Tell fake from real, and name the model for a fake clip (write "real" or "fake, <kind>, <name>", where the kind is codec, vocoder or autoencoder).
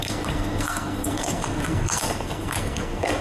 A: fake, codec, SNAC